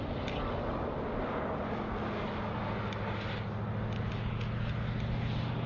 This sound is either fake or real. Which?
real